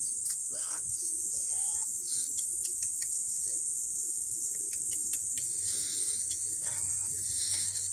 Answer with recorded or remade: remade